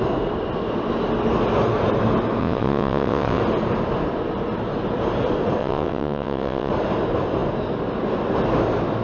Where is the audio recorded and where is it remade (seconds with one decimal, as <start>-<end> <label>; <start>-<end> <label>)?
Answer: 0.0-2.4 recorded; 2.4-3.4 remade; 3.4-5.6 recorded; 5.6-6.7 remade; 6.7-9.0 recorded